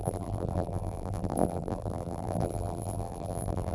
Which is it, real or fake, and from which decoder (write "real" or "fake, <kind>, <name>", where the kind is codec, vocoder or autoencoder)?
fake, vocoder, BigVGAN v2